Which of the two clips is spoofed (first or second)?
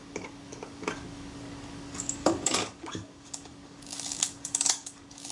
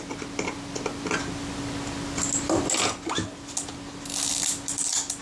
first